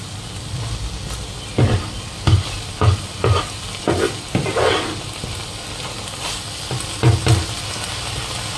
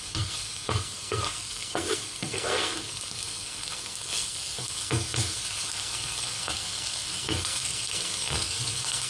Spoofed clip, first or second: second